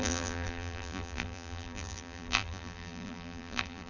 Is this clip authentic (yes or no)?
no